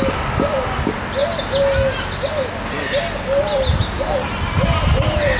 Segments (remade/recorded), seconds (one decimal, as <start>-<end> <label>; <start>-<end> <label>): 0.0-5.4 recorded